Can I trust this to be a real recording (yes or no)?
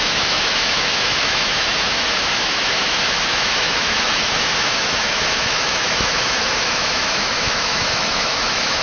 no